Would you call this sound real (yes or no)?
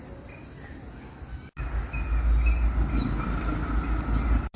yes